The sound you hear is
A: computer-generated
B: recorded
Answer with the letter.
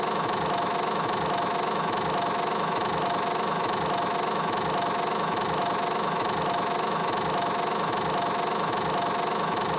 A